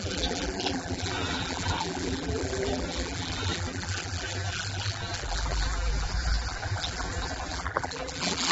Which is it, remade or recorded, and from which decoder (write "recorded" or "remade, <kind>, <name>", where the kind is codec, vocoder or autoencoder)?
remade, vocoder, BigVGAN v2